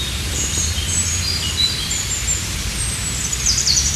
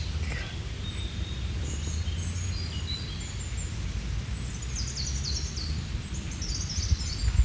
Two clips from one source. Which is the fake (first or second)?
first